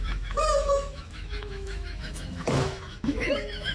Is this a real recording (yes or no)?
no